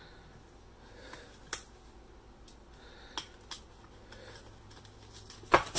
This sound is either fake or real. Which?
real